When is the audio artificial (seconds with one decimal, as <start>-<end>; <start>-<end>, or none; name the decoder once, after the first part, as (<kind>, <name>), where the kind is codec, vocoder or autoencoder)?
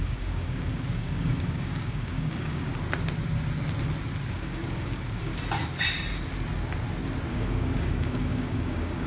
0.0-2.7 (codec, DAC); 4.3-5.3; 7.3-9.1